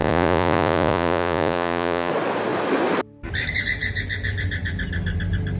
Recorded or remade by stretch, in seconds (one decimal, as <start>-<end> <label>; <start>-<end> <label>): 0.0-2.1 remade; 2.1-5.6 recorded